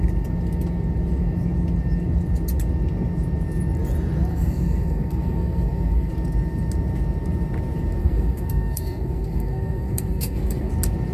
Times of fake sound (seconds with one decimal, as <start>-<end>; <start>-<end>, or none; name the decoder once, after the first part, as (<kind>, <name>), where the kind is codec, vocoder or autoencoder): 4.3-6.1 (codec, SNAC); 8.0-10.7